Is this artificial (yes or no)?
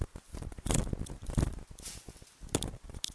no